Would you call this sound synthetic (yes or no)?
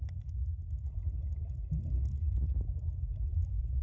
no